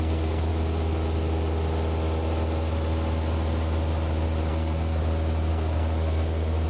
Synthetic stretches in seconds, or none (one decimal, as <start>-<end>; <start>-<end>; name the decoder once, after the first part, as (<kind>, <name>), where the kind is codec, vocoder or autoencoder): 0.0-0.5 (codec, SNAC); 4.5-5.0; 5.5-6.7